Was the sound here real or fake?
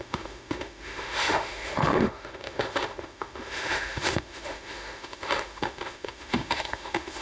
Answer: fake